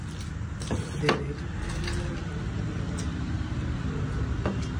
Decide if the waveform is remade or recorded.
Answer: recorded